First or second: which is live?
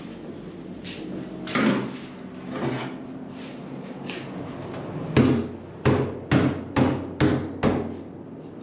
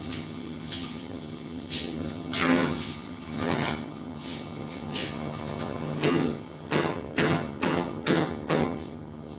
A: first